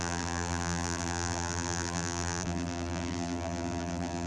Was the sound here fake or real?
fake